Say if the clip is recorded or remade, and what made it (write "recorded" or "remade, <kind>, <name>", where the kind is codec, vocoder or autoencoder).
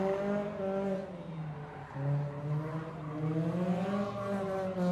recorded